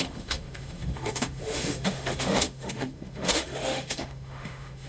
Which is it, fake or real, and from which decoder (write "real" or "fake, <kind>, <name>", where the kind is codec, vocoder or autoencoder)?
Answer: fake, autoencoder, DAC-VAE